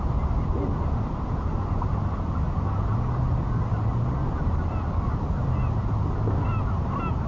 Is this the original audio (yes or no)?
yes